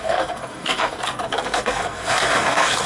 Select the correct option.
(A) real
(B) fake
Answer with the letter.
B